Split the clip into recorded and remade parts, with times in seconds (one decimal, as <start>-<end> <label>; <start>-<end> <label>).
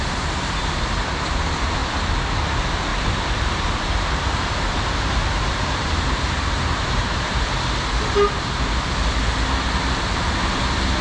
0.0-2.9 recorded; 2.9-7.4 remade; 7.4-11.0 recorded